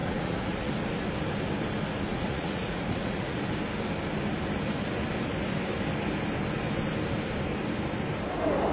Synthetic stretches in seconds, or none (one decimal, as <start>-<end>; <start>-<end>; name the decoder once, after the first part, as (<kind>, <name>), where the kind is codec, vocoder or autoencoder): 0.0-0.7 (vocoder, Vocos); 2.1-3.4